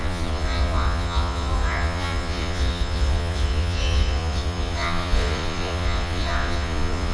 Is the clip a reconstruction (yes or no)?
yes